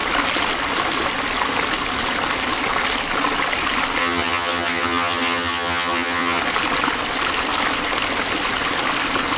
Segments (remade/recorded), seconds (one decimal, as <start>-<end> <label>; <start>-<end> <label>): 0.0-4.0 recorded; 4.0-6.4 remade; 6.4-9.4 recorded